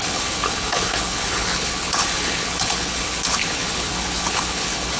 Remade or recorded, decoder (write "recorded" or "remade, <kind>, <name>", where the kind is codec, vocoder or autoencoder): remade, codec, HILCodec